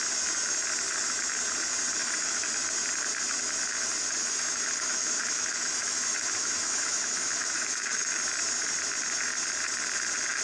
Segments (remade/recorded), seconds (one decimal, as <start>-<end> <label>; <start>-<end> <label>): 0.0-2.0 recorded; 2.0-2.5 remade; 2.5-4.2 recorded; 4.2-8.2 remade; 8.2-10.4 recorded